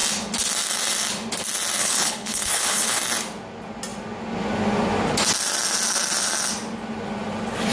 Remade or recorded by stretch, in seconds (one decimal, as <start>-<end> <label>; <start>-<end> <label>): 0.0-1.8 recorded; 1.8-3.0 remade; 3.0-7.7 recorded

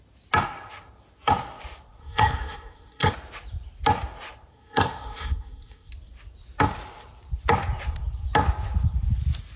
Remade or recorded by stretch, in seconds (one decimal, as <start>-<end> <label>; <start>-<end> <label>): 0.0-2.0 recorded; 2.0-3.1 remade; 3.1-4.5 recorded; 4.5-5.9 remade; 5.9-9.6 recorded